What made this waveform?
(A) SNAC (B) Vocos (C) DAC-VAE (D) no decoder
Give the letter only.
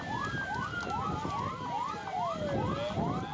D